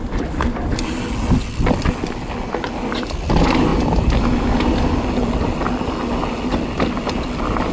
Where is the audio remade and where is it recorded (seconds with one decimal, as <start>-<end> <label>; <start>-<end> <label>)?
0.0-7.7 recorded